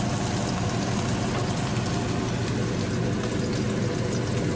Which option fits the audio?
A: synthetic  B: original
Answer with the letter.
B